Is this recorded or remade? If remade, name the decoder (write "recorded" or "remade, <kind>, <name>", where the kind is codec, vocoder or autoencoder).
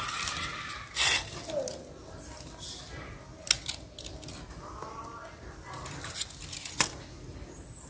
recorded